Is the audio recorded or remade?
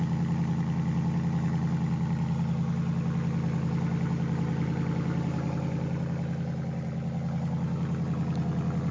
recorded